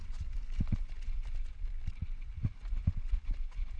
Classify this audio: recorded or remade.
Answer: recorded